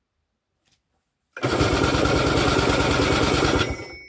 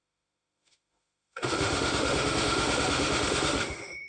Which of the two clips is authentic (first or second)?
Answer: first